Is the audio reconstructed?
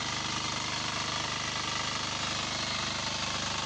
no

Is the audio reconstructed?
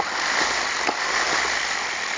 no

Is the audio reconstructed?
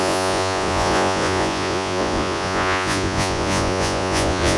yes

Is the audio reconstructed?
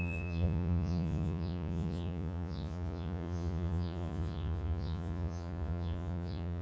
yes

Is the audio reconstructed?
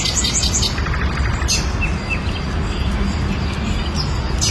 no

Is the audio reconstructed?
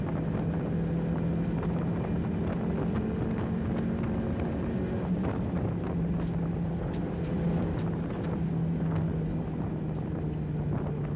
no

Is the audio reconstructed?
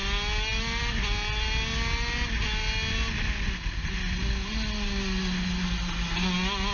no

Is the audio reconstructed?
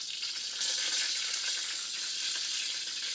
no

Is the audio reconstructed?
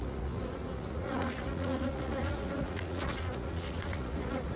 yes